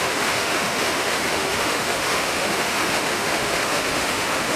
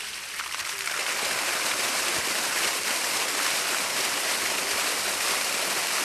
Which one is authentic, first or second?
second